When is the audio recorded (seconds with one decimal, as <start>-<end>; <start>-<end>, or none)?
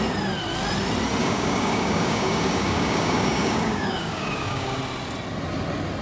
0.0-1.2; 4.8-6.0